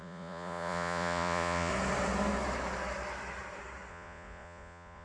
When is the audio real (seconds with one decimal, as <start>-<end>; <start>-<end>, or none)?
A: 1.7-3.9